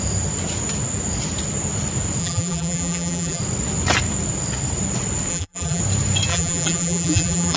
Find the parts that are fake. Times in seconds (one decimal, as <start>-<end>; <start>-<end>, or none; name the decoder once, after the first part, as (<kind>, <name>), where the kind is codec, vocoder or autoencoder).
2.2-3.4 (vocoder, BigVGAN v2); 5.3-5.8; 6.3-7.6